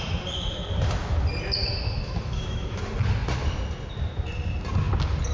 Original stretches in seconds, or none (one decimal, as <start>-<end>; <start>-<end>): 0.0-1.7; 2.8-5.3